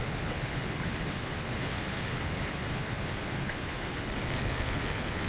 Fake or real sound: fake